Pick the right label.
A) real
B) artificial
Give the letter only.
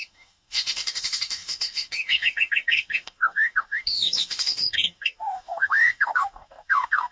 B